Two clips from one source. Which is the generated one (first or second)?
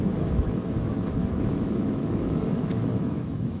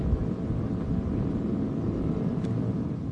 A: first